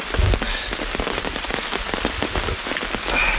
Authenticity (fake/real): real